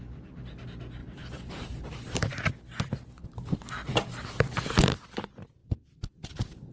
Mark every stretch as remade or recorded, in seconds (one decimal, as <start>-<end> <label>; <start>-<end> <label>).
0.0-1.0 recorded; 1.0-2.5 remade; 2.5-6.7 recorded